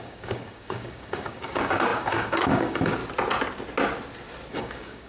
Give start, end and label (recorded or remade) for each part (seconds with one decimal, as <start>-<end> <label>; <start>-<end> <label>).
0.0-3.0 remade; 3.0-4.5 recorded; 4.5-5.1 remade